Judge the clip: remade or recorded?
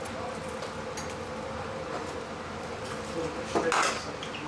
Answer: recorded